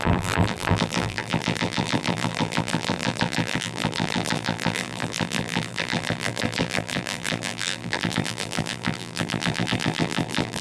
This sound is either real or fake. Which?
fake